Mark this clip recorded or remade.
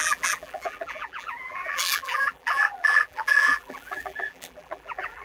remade